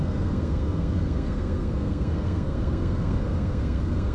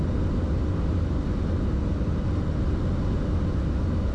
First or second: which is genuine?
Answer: second